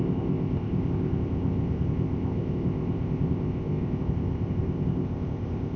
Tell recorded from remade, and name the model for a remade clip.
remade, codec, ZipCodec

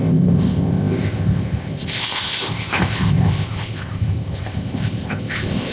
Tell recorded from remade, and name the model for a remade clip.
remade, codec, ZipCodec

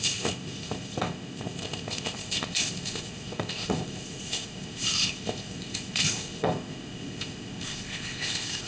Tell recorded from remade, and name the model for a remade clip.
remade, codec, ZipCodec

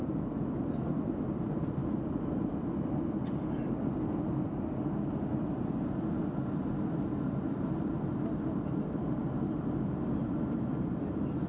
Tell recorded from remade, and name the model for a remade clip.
recorded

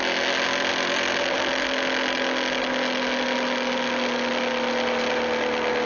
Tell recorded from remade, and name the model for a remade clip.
recorded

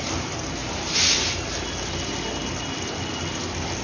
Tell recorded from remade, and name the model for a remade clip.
recorded